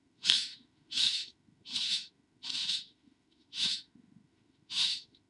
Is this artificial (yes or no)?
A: yes